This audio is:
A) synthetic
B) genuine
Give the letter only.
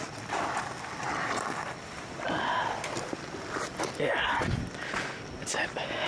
B